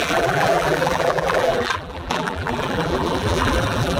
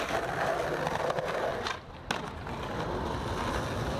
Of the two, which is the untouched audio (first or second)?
second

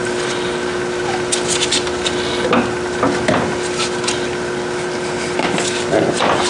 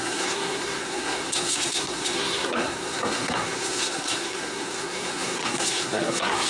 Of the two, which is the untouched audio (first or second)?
first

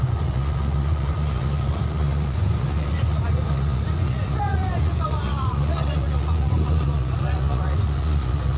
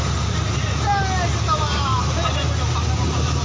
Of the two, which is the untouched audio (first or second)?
second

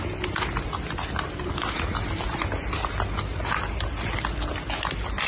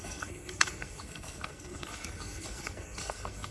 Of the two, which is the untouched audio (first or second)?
first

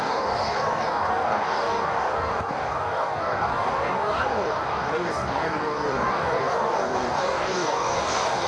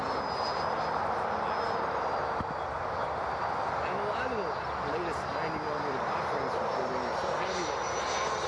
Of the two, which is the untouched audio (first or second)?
second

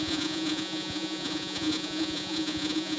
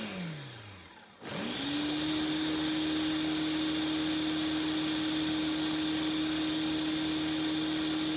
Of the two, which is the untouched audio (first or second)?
second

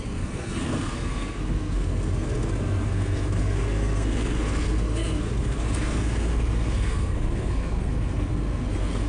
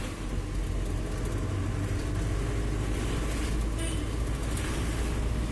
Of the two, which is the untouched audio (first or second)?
second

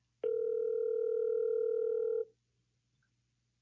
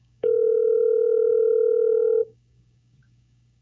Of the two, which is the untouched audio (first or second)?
first